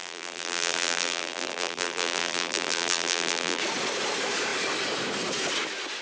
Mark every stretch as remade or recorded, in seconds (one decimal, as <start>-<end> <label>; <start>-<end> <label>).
0.0-3.6 remade; 3.6-6.0 recorded